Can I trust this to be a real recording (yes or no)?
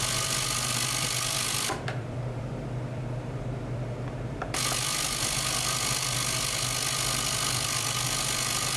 no